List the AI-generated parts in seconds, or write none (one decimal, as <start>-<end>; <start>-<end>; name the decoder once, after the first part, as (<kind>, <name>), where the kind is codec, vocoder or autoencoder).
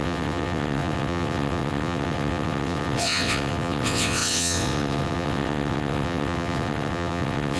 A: 0.0-7.6 (vocoder, WaveNeXt)